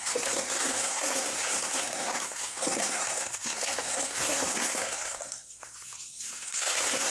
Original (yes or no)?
no